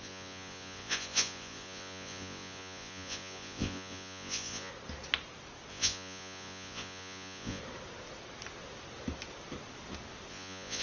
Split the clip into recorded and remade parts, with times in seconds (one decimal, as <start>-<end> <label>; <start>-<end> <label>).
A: 0.0-4.7 remade; 4.7-5.7 recorded; 5.7-7.6 remade; 7.6-10.3 recorded; 10.3-10.8 remade